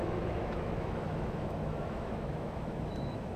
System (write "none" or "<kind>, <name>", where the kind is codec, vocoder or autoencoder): autoencoder, DAC-VAE